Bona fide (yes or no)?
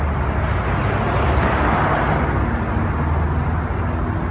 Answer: yes